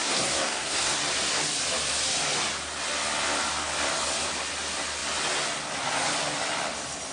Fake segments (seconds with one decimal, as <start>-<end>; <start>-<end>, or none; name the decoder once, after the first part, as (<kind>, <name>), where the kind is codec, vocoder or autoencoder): 0.0-1.0 (codec, SNAC)